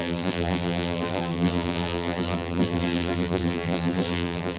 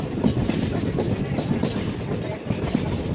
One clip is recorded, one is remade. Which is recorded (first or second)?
second